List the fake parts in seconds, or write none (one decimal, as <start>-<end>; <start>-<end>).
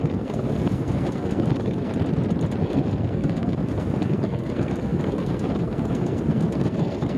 0.0-1.9; 2.6-7.2